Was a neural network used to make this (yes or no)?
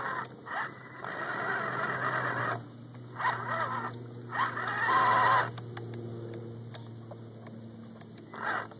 no